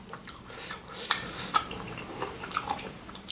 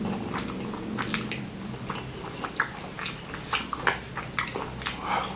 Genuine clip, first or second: second